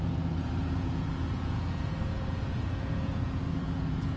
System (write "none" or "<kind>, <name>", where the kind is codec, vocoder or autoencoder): vocoder, Vocos